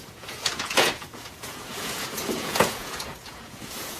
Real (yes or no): no